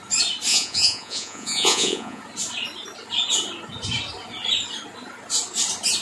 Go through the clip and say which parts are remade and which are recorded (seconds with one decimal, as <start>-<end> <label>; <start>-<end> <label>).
0.0-0.5 recorded; 0.5-2.2 remade; 2.2-6.0 recorded